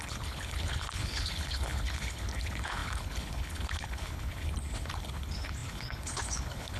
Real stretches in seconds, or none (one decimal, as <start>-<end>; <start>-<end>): none